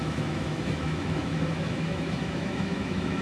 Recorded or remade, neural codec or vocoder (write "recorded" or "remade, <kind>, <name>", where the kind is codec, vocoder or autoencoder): remade, autoencoder, DAC-VAE